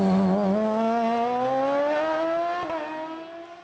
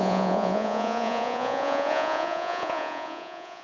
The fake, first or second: second